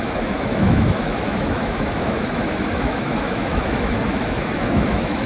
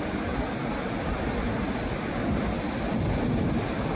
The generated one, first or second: first